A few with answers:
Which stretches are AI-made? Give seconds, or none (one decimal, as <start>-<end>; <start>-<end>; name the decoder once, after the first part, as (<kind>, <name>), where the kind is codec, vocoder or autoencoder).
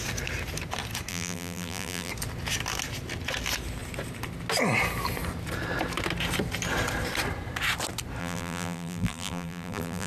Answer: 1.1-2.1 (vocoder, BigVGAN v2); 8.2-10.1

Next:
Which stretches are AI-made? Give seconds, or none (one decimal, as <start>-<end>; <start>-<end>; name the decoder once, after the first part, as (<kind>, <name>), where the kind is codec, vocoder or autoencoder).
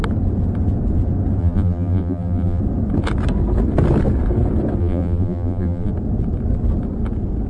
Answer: 1.4-2.6 (vocoder, BigVGAN v2); 4.8-5.9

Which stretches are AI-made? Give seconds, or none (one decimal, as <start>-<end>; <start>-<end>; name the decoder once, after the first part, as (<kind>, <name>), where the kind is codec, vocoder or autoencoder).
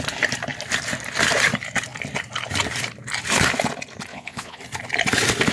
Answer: 4.1-4.6 (vocoder, Vocos)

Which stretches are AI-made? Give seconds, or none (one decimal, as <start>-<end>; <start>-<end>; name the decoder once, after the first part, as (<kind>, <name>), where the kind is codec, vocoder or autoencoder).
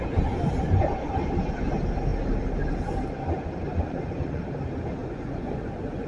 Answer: 3.7-4.4 (vocoder, Vocos); 5.0-6.1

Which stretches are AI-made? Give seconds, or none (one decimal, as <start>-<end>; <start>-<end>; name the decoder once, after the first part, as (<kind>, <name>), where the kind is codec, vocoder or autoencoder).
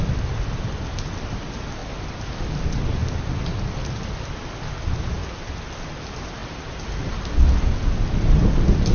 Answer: 1.8-2.5 (vocoder, BigVGAN v2); 3.0-4.7; 5.2-5.8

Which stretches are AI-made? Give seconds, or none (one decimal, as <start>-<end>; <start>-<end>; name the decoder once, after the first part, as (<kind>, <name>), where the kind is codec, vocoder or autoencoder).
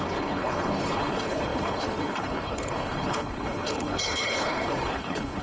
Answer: 0.0-5.4 (codec, HILCodec)